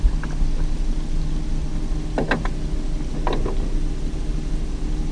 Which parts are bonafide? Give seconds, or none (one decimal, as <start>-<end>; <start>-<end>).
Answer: 0.0-5.1